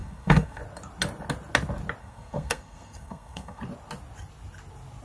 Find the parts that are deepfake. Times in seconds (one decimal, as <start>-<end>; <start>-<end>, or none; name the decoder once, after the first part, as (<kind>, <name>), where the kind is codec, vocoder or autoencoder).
0.0-0.6 (codec, SNAC); 2.0-3.6